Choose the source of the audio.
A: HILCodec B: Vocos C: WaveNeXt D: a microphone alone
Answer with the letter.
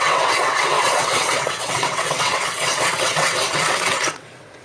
C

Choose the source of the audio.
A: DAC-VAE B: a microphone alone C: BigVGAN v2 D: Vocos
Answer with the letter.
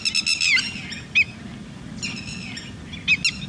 B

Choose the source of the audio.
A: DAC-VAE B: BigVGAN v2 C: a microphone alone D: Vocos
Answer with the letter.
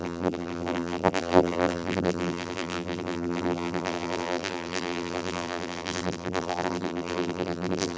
B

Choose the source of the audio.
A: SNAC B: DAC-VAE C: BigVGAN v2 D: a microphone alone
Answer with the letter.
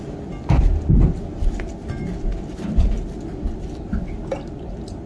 D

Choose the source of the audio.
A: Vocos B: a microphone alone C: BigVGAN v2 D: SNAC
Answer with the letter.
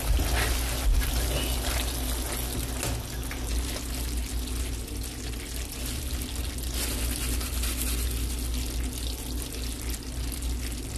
B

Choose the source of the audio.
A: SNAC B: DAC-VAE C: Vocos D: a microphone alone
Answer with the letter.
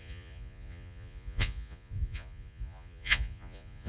C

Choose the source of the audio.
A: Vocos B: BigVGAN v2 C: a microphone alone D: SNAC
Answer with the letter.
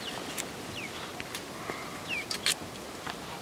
C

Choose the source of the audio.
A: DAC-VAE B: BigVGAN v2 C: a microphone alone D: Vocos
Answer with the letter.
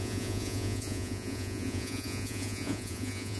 D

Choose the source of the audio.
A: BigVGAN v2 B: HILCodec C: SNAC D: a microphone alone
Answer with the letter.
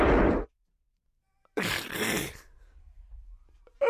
A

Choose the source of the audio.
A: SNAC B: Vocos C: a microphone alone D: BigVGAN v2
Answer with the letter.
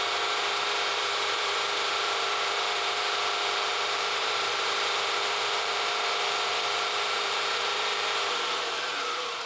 D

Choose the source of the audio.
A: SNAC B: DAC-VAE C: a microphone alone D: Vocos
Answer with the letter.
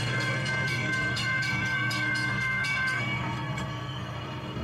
A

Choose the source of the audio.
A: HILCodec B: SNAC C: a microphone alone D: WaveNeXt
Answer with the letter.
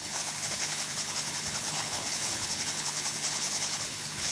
A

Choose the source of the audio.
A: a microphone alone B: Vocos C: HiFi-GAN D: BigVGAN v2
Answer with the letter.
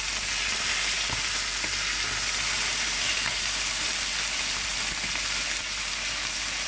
A